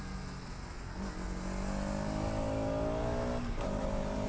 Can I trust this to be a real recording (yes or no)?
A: yes